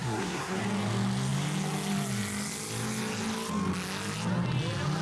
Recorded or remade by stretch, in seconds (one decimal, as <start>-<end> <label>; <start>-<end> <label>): 0.0-0.6 remade; 0.6-5.0 recorded